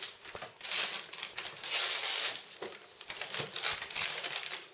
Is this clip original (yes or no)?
yes